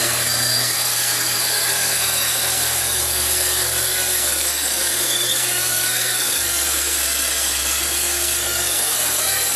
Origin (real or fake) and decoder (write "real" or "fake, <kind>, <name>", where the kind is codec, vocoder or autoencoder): fake, codec, SNAC